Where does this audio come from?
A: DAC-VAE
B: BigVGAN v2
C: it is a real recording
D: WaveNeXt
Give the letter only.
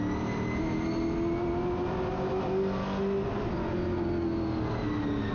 C